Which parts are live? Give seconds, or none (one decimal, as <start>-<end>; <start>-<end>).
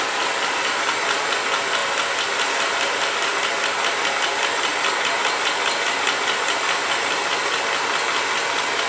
0.0-8.9